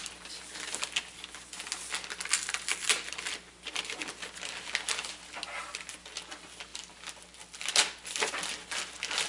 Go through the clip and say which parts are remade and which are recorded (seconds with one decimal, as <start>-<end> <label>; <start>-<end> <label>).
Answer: 0.0-9.3 recorded